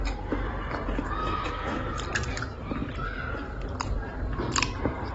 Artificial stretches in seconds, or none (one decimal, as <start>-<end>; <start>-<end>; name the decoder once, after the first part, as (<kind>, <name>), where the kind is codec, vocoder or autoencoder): 1.2-2.0 (autoencoder, DAC-VAE)

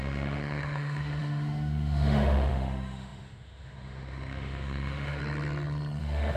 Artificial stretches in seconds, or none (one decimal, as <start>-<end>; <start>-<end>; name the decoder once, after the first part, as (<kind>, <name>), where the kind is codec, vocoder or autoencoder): 0.0-5.2 (autoencoder, DAC-VAE); 6.0-6.4

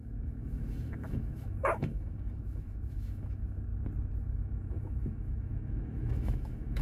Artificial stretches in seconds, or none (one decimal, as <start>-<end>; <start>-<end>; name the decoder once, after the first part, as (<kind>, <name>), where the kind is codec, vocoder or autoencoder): 0.0-3.7 (autoencoder, DAC-VAE); 4.2-6.8

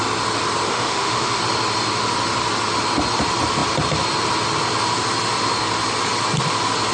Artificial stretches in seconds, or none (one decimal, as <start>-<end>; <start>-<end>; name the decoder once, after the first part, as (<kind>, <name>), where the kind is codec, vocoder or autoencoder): 0.7-1.4 (autoencoder, DAC-VAE)

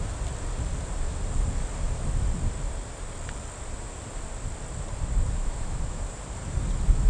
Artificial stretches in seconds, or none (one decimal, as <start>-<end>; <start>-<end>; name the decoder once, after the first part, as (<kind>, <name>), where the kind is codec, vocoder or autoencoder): 5.4-6.0 (autoencoder, DAC-VAE)

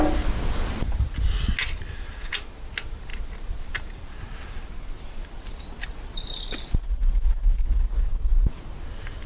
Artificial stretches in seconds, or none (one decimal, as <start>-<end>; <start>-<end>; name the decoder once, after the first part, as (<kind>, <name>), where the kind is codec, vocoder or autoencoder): none